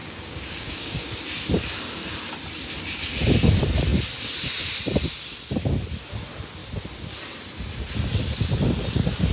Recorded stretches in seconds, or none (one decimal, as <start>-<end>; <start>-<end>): 1.1-9.3